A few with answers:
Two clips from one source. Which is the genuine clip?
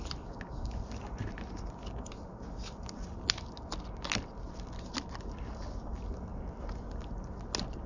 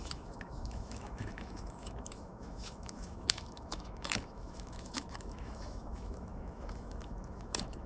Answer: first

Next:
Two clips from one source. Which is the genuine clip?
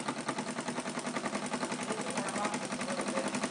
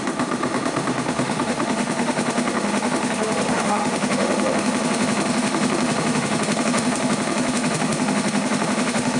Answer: first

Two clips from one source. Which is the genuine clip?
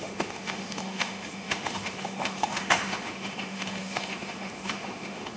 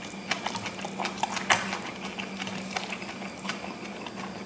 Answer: second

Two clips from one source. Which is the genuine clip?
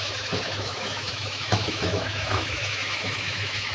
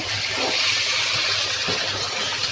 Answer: second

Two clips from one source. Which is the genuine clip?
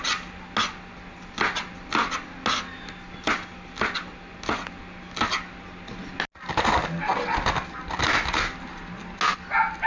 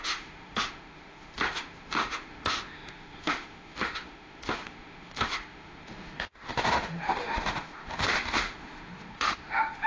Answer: first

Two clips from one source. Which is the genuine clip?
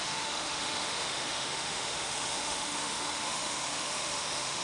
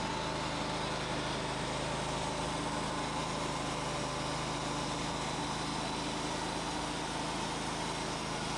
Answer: second